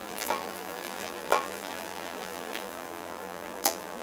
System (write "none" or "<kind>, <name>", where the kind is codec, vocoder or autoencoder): vocoder, BigVGAN v2